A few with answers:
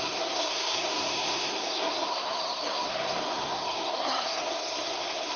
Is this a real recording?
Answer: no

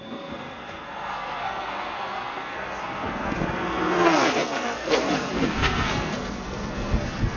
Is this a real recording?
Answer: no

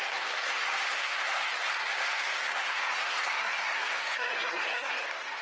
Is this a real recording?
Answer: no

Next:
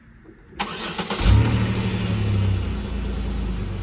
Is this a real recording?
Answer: yes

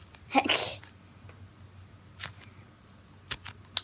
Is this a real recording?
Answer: yes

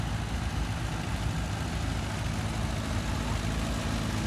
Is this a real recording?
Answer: yes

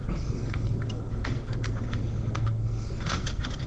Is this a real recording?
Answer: no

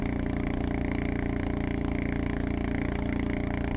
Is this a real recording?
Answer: yes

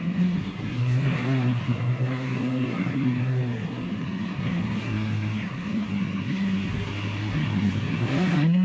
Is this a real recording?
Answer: no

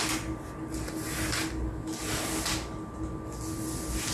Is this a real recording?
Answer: yes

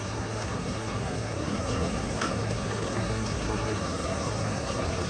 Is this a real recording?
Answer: no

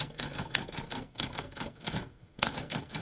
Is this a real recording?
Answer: no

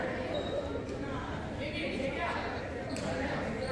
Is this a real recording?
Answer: yes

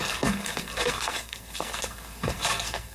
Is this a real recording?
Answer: no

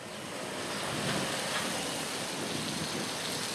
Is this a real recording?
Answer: yes